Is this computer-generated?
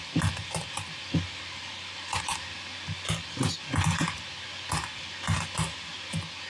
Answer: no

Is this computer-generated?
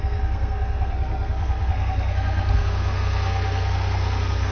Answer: yes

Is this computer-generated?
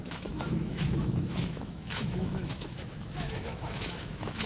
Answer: yes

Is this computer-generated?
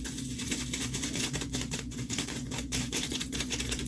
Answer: yes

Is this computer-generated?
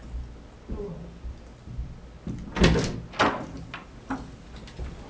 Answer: no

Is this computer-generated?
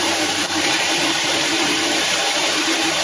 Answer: yes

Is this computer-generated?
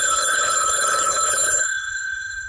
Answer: yes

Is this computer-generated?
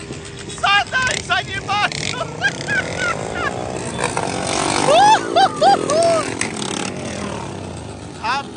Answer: no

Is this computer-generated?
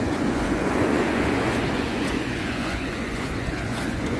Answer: yes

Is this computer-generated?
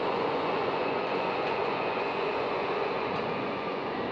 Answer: yes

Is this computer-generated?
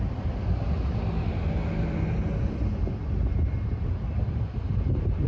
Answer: no